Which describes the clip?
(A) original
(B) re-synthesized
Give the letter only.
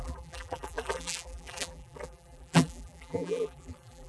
B